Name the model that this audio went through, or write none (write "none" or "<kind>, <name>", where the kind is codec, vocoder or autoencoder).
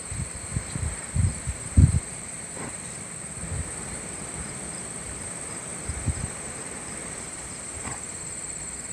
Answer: vocoder, BigVGAN v2